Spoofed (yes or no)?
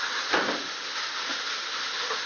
no